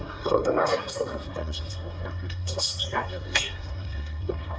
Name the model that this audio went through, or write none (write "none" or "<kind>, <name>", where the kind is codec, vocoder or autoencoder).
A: codec, SNAC